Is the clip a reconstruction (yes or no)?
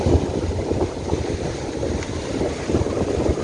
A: no